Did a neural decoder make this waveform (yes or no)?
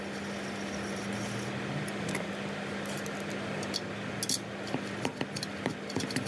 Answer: no